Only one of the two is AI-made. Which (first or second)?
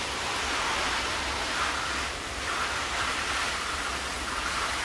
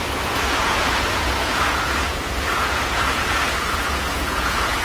second